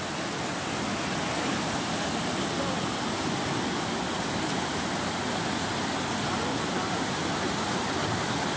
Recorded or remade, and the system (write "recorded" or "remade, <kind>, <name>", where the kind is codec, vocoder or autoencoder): recorded